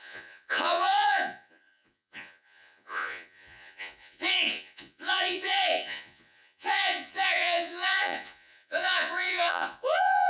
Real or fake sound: fake